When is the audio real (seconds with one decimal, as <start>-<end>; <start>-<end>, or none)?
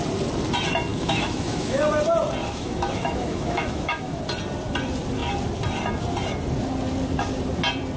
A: 0.0-0.9; 1.8-2.4; 4.2-8.0